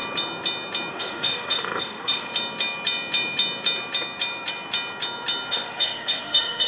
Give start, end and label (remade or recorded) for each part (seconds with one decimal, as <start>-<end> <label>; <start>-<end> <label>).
0.0-0.9 recorded; 0.9-2.3 remade; 2.3-5.5 recorded; 5.5-6.7 remade